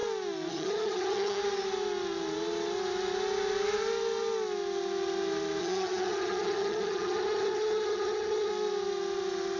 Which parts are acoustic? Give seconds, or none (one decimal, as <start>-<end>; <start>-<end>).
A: 0.0-0.5; 1.4-5.6; 8.5-9.6